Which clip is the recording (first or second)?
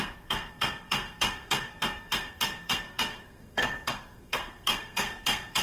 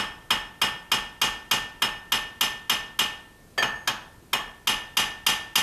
second